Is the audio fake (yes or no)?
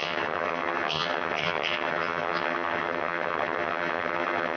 yes